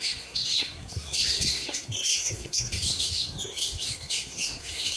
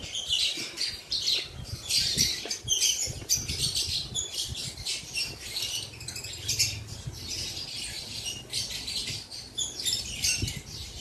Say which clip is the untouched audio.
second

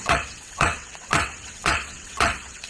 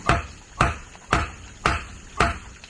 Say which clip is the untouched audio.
second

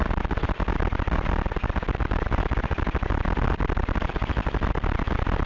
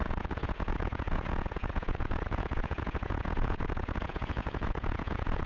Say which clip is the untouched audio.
first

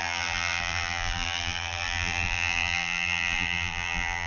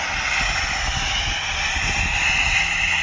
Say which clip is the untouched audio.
second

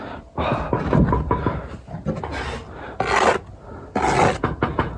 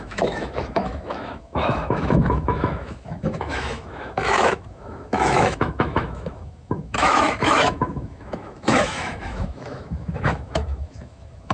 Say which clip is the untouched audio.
first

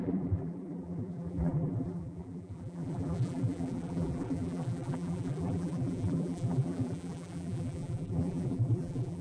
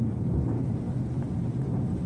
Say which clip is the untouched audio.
second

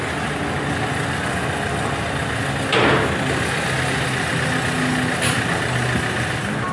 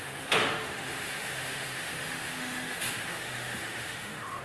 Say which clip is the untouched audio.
first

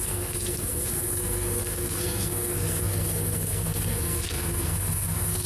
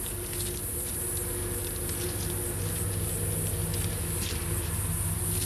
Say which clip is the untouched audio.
second